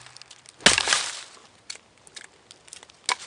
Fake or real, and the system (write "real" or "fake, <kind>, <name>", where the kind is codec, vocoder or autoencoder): real